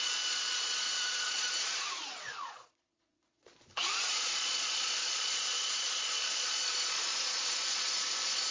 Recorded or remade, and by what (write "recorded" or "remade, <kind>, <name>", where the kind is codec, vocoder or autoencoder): remade, vocoder, Vocos